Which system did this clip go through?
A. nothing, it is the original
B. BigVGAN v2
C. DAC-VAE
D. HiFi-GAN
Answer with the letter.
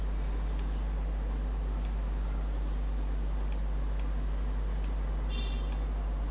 A